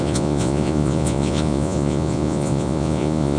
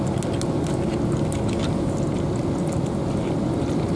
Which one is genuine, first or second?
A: second